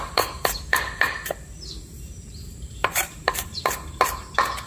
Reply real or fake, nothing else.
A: fake